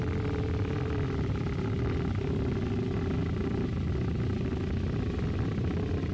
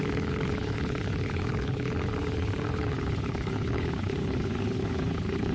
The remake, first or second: second